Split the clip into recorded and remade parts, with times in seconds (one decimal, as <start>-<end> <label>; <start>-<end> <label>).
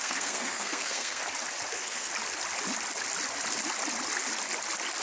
0.0-1.2 remade; 1.2-1.7 recorded; 1.7-2.1 remade; 2.1-5.0 recorded